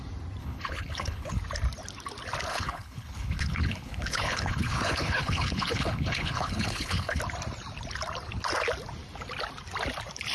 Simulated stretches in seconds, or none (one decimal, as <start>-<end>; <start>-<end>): 0.4-1.4; 2.5-7.2